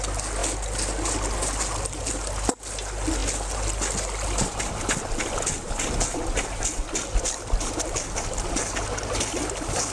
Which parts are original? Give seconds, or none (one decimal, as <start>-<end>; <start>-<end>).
0.0-9.9